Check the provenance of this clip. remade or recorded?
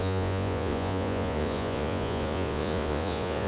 remade